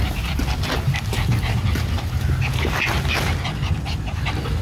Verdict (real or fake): real